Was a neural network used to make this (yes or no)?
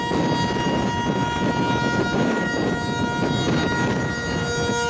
no